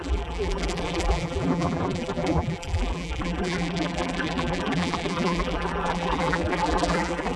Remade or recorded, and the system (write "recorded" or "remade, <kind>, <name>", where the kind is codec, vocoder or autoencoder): remade, vocoder, BigVGAN v2